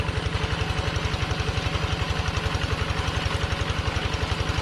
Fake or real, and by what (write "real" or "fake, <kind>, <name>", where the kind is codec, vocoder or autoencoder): real